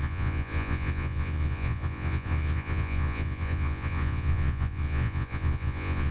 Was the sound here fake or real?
fake